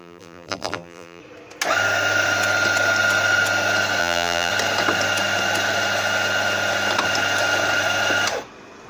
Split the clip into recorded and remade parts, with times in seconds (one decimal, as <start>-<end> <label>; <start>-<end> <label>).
0.0-1.2 remade; 1.2-4.0 recorded; 4.0-4.5 remade; 4.5-8.9 recorded